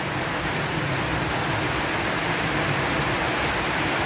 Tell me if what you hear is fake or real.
real